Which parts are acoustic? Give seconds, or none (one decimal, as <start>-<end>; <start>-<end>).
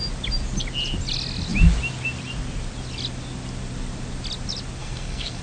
0.0-4.8